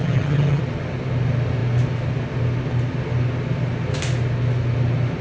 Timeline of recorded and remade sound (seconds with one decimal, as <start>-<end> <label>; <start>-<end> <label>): 0.0-0.6 remade; 0.6-5.2 recorded